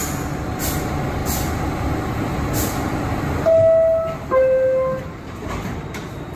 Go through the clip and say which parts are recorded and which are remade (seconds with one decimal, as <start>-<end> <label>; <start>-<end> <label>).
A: 0.0-6.4 recorded

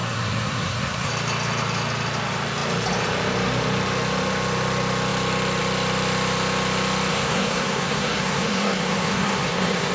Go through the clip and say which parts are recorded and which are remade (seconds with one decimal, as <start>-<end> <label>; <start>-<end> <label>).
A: 0.0-1.1 remade; 1.1-7.1 recorded; 7.1-9.9 remade

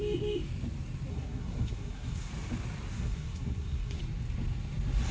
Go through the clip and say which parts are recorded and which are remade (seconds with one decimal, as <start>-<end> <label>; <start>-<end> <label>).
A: 0.0-1.1 recorded; 1.1-2.3 remade; 2.3-2.9 recorded; 2.9-4.0 remade; 4.0-5.1 recorded

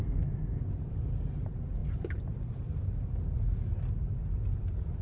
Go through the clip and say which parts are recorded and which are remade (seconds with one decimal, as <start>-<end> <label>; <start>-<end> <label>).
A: 0.0-0.6 remade; 0.6-5.0 recorded